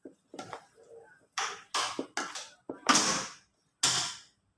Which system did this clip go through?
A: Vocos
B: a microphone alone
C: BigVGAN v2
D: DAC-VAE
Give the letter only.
B